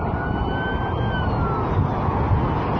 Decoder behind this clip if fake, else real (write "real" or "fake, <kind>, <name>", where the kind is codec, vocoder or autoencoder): real